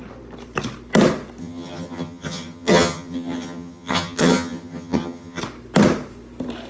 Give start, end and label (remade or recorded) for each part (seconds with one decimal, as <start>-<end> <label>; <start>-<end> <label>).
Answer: 0.0-1.4 recorded; 1.4-5.4 remade; 5.4-6.7 recorded